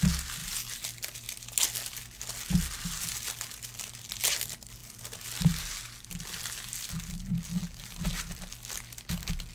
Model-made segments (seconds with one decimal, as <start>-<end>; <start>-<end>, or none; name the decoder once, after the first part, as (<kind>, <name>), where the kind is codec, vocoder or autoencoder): none